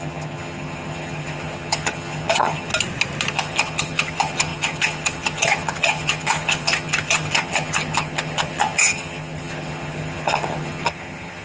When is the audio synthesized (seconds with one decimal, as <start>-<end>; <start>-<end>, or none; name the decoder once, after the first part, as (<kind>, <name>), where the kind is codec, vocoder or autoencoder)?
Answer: 0.0-2.7 (vocoder, HiFi-GAN); 3.3-11.4